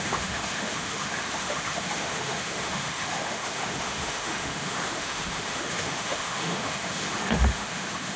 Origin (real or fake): fake